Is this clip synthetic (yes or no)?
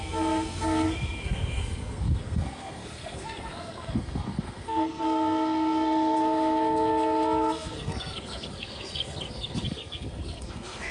yes